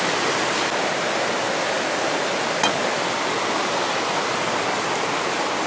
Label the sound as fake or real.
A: real